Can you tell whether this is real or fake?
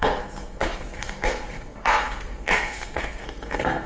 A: fake